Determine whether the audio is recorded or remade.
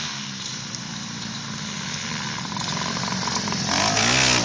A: recorded